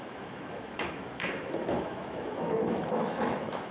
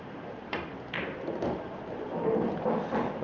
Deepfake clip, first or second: first